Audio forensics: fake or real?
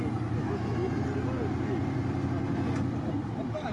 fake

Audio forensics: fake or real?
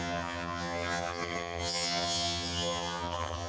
fake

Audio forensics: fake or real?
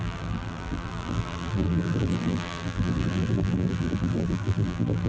fake